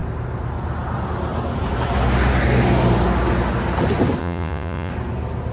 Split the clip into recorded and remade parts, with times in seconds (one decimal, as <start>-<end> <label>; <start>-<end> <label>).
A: 0.0-4.2 recorded; 4.2-4.9 remade; 4.9-5.5 recorded